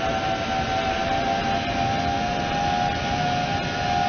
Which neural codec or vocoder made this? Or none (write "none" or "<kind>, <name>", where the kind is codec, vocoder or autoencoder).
none